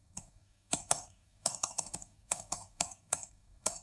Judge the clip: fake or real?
fake